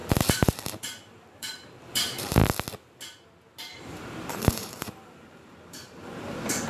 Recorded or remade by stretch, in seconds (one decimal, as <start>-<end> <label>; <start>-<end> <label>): 0.0-2.4 remade; 2.4-3.7 recorded; 3.7-6.7 remade